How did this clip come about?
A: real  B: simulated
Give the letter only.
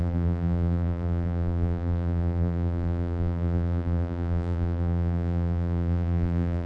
B